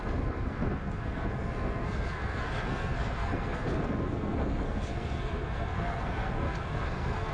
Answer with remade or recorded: remade